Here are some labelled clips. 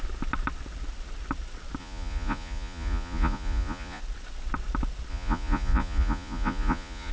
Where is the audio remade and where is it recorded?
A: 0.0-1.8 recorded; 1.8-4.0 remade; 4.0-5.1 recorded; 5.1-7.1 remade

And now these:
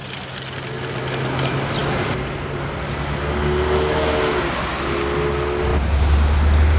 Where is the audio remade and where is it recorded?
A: 0.0-6.8 recorded